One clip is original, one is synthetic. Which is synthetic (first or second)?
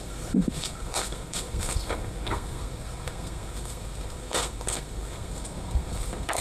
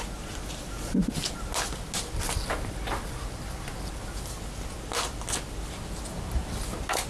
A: first